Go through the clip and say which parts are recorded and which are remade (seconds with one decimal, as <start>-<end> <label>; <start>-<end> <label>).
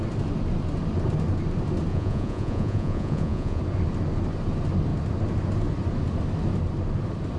0.0-1.9 recorded; 1.9-3.6 remade; 3.6-7.4 recorded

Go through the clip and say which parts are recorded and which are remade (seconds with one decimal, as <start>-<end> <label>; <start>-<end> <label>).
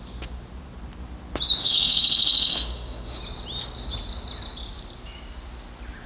0.0-1.6 recorded; 1.6-3.2 remade; 3.2-6.1 recorded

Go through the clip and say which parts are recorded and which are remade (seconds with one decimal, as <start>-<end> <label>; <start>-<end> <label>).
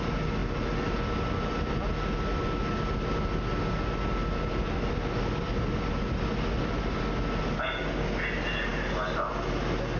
0.0-10.0 recorded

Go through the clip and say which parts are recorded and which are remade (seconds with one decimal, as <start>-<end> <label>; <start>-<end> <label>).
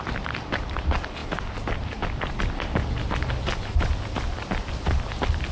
0.0-5.5 recorded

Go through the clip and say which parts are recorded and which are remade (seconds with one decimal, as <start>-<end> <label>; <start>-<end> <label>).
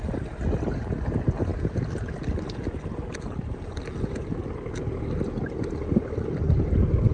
0.0-7.1 recorded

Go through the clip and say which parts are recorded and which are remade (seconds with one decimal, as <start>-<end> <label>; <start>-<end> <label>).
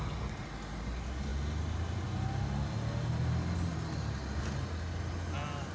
0.0-5.7 recorded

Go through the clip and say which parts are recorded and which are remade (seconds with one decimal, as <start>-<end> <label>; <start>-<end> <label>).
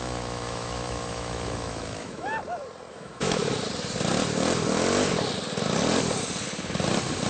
0.0-2.3 remade; 2.3-2.9 recorded; 2.9-3.4 remade; 3.4-7.3 recorded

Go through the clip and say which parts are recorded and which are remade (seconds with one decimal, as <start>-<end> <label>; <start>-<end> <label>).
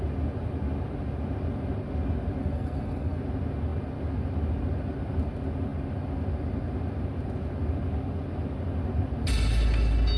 0.0-2.4 recorded; 2.4-3.2 remade; 3.2-10.2 recorded